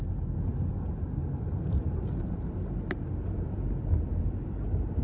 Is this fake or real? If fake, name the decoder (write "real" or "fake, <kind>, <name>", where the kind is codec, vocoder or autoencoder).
real